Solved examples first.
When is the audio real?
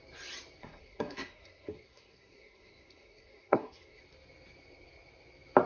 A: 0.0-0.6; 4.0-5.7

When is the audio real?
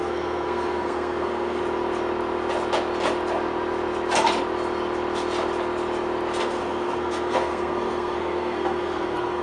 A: 1.6-6.4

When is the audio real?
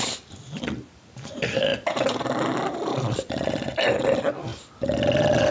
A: 0.0-5.5